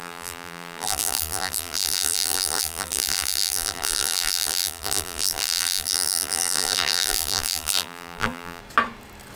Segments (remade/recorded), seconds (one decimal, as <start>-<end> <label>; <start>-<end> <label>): 0.0-8.6 remade; 8.6-9.4 recorded